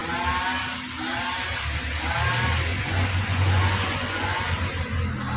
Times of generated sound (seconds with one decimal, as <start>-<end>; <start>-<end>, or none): 2.7-4.4